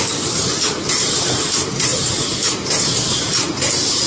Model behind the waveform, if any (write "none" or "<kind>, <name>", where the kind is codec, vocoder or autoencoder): none